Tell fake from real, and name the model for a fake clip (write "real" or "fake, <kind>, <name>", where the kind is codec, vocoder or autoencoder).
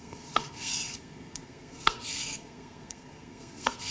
fake, codec, SNAC